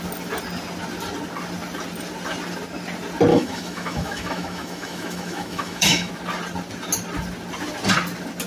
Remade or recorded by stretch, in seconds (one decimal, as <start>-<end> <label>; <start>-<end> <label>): 0.0-3.3 recorded; 3.3-6.1 remade; 6.1-8.5 recorded